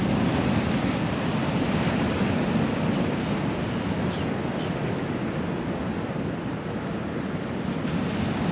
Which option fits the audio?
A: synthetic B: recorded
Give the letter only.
B